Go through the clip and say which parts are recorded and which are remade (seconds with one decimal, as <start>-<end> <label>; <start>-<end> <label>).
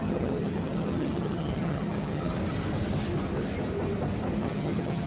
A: 0.0-2.4 remade; 2.4-4.4 recorded; 4.4-5.1 remade